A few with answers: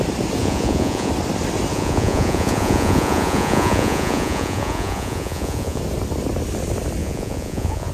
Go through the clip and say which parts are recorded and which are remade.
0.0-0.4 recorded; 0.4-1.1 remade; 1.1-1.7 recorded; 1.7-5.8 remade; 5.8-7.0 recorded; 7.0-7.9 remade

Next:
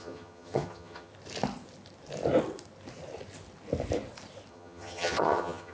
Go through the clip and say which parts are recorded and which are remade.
0.0-1.1 remade; 1.1-4.5 recorded; 4.5-5.7 remade